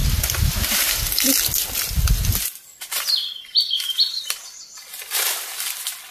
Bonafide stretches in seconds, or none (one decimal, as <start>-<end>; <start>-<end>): 0.0-6.1